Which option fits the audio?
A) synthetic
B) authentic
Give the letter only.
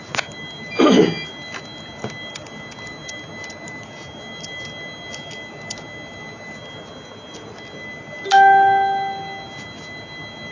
B